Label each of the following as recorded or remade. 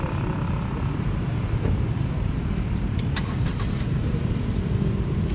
remade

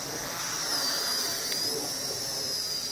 recorded